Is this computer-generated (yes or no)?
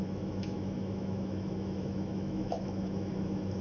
yes